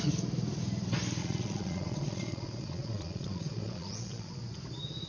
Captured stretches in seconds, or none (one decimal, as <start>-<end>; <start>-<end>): 0.0-1.2; 4.3-5.1